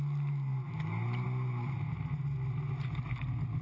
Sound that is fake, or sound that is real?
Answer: real